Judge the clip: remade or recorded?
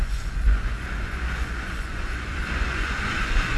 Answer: remade